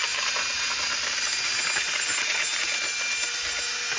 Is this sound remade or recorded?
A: recorded